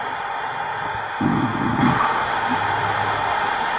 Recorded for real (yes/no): yes